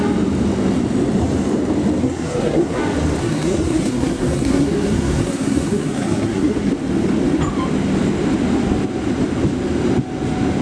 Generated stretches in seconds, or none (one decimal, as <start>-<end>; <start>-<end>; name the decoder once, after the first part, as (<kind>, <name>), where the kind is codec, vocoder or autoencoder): 2.0-2.8 (codec, SNAC); 3.2-6.7